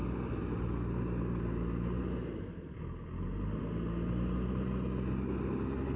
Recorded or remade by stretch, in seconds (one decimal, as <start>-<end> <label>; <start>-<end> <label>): 0.0-6.0 recorded

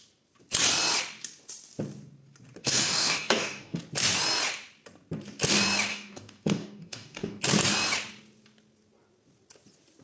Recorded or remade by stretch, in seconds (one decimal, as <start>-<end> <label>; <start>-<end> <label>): 0.0-2.6 recorded; 2.6-3.8 remade; 3.8-5.9 recorded; 5.9-7.4 remade; 7.4-10.0 recorded

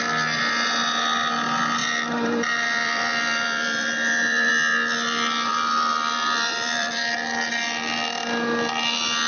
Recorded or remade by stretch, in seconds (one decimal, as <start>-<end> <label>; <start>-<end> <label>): 0.0-1.8 recorded; 1.8-4.5 remade; 4.5-5.5 recorded; 5.5-7.0 remade; 7.0-9.3 recorded

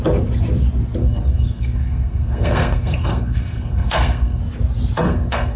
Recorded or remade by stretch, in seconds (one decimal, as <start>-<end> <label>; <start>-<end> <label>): 0.0-1.0 recorded; 1.0-4.4 remade; 4.4-5.0 recorded; 5.0-5.6 remade

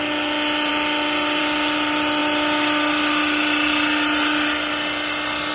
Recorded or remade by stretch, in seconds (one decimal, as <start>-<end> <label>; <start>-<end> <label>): 0.0-5.5 recorded

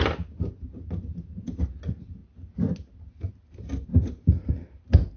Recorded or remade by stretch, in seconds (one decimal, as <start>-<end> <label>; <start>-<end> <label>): 0.0-5.2 recorded